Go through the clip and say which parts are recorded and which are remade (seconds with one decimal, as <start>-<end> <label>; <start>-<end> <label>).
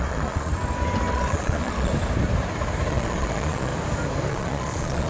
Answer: 0.0-0.5 remade; 0.5-1.1 recorded; 1.1-1.9 remade; 1.9-2.9 recorded; 2.9-3.7 remade; 3.7-4.3 recorded; 4.3-5.1 remade